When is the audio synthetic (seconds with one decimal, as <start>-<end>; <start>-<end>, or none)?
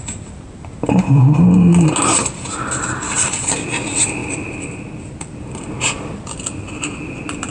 none